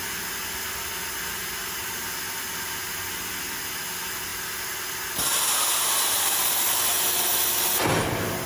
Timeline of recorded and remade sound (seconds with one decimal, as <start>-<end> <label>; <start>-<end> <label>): 0.0-8.5 recorded